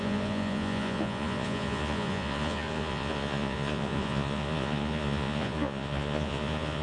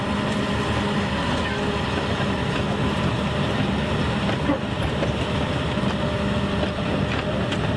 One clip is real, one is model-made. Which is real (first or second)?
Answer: second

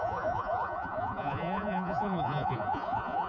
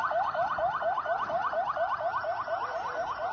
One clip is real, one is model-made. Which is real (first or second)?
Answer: second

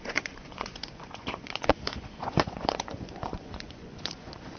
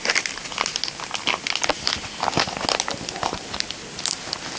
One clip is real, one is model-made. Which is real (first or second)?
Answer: second